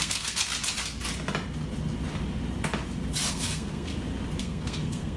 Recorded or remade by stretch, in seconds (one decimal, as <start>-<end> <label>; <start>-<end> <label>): 0.0-0.5 remade; 0.5-3.3 recorded; 3.3-3.9 remade; 3.9-4.4 recorded; 4.4-5.2 remade